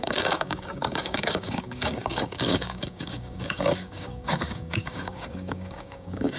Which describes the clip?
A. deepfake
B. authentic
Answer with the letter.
A